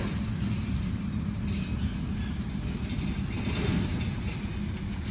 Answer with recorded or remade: recorded